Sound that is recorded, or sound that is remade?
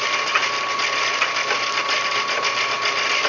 recorded